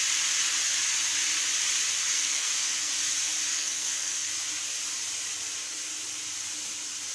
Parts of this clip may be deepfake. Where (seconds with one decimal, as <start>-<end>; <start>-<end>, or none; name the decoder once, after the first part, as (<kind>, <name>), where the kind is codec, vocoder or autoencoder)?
2.1-2.9 (codec, SNAC); 3.5-4.3